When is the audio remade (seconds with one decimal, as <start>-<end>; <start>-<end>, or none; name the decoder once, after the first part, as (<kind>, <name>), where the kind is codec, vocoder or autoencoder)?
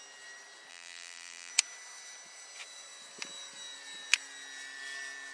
0.7-1.5 (vocoder, BigVGAN v2)